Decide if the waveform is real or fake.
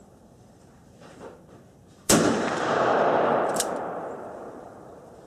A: fake